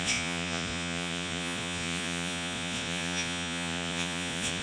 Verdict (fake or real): fake